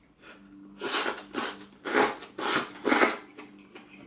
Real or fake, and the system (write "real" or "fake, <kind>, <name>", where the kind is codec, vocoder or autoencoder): real